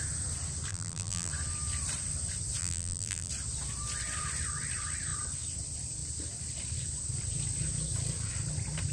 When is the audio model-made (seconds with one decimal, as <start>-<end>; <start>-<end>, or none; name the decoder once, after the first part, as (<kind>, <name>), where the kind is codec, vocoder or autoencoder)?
0.7-1.3 (vocoder, BigVGAN v2); 2.6-3.3